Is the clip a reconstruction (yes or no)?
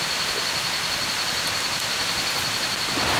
no